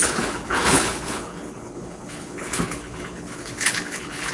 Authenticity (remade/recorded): remade